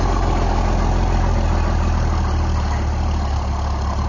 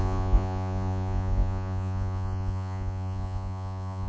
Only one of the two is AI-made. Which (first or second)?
second